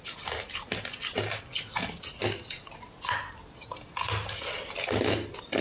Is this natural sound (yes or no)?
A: yes